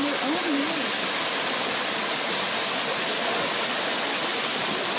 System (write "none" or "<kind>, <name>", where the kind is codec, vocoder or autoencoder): none